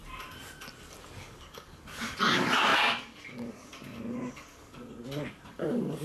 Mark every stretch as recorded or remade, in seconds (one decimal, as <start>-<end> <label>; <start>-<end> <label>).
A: 0.0-1.2 recorded; 1.2-4.9 remade; 4.9-5.5 recorded; 5.5-6.0 remade